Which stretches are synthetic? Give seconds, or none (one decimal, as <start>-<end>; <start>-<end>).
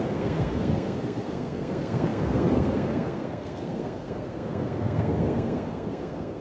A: 0.0-6.4